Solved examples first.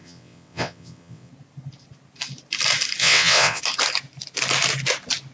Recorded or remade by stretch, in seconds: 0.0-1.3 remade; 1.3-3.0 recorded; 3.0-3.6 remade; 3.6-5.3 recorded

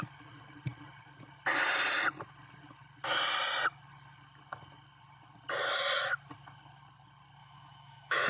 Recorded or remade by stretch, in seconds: 0.0-7.4 recorded; 7.4-8.3 remade

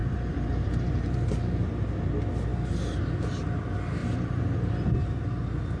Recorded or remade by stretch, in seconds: 0.0-1.7 remade; 1.7-4.0 recorded; 4.0-4.6 remade; 4.6-5.8 recorded